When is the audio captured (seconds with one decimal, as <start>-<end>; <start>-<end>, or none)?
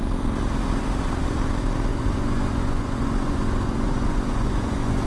0.0-1.9